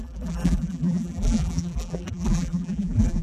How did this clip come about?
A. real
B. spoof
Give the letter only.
B